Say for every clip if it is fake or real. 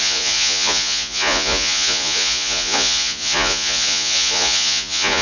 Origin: fake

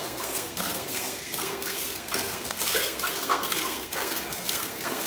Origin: fake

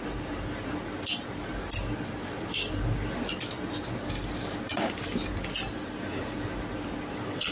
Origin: real